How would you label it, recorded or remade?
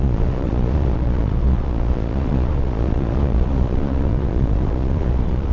remade